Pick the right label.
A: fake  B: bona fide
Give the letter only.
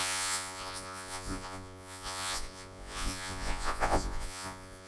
A